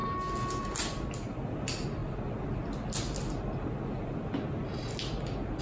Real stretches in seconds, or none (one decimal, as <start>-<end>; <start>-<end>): 0.0-0.6; 2.0-5.6